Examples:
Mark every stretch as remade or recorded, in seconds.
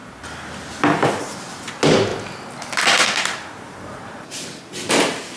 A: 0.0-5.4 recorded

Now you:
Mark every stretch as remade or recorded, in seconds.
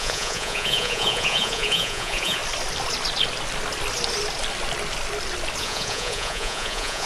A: 0.0-2.4 remade; 2.4-5.6 recorded; 5.6-7.1 remade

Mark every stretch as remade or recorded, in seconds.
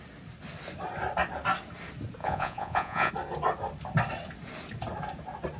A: 0.0-2.2 recorded; 2.2-3.1 remade; 3.1-5.6 recorded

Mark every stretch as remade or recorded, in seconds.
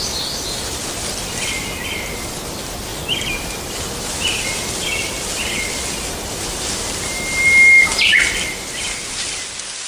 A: 0.0-9.9 recorded